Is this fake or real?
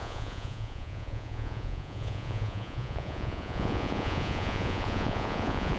fake